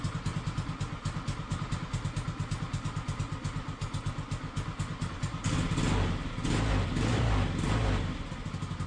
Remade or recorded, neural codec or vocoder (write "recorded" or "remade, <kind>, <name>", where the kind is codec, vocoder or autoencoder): recorded